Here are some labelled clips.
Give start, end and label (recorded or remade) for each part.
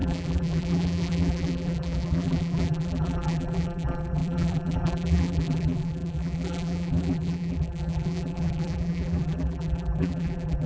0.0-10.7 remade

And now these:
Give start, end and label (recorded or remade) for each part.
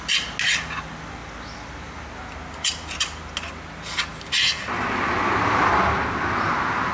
0.0-6.9 recorded